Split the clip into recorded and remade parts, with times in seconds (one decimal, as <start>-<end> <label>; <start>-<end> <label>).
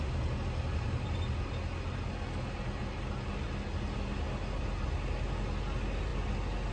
0.0-6.7 recorded